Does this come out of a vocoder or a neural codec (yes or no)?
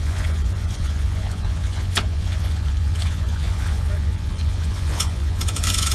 yes